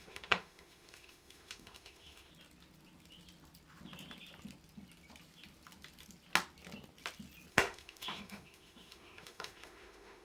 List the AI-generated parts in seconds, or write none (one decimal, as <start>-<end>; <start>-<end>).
0.0-2.3; 7.5-10.2